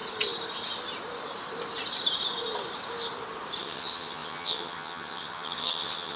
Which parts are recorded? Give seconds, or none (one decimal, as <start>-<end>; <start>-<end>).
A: 0.0-3.6